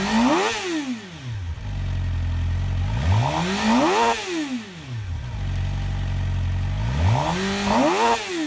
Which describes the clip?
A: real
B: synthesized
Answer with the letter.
A